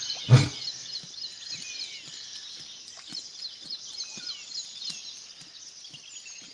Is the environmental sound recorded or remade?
recorded